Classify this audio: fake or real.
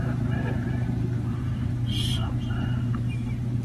fake